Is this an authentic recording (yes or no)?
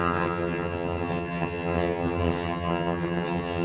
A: no